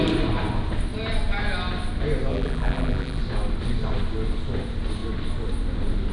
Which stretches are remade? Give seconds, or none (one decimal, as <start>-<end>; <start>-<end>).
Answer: 2.3-3.2